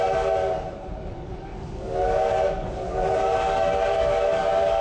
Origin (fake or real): fake